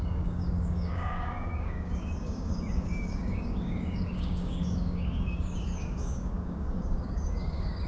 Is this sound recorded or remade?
remade